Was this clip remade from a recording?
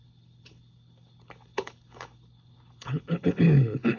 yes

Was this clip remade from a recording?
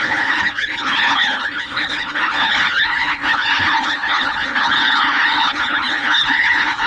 yes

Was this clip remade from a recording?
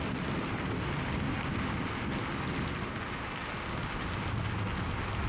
no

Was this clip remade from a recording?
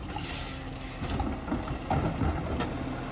no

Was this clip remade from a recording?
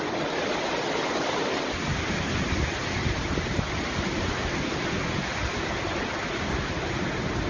no